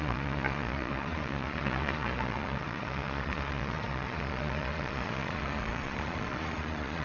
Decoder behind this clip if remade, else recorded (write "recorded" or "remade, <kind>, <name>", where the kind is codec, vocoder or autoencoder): remade, vocoder, Vocos